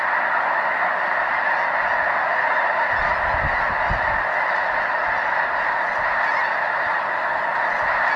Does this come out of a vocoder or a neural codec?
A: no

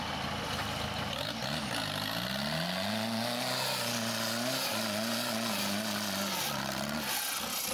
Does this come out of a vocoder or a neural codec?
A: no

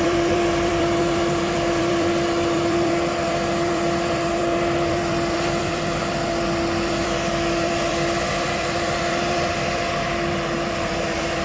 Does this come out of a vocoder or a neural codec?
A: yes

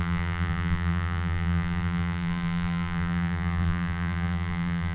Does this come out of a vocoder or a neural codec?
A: yes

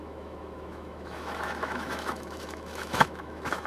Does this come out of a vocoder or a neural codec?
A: yes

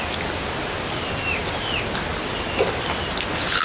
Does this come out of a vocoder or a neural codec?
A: no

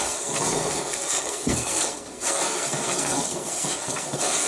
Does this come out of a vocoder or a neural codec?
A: yes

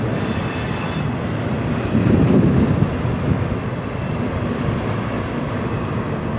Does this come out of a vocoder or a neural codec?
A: no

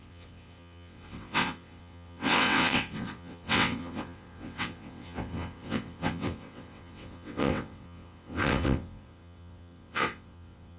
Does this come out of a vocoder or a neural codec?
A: yes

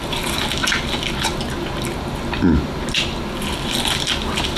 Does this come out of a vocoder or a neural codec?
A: no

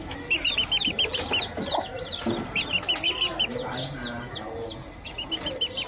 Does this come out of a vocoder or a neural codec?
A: no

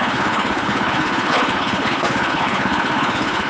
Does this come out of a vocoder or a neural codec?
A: yes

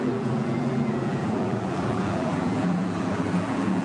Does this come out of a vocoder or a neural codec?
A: yes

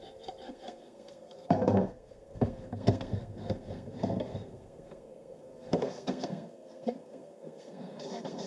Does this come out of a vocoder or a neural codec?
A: yes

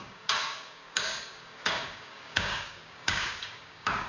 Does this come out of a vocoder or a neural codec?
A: yes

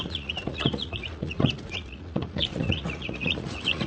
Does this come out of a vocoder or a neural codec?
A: yes